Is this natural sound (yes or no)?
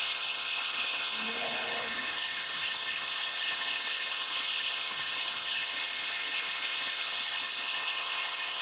no